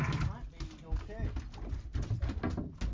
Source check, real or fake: real